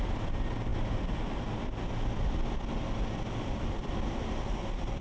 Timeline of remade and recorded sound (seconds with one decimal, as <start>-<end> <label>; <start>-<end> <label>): 0.0-5.0 recorded